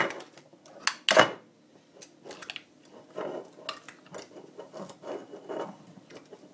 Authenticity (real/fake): real